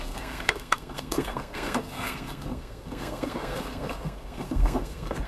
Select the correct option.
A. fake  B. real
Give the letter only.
A